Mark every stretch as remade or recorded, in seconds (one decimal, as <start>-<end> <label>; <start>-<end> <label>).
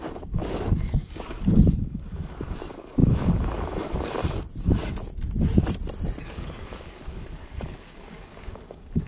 0.0-4.2 remade; 4.2-6.2 recorded; 6.2-9.1 remade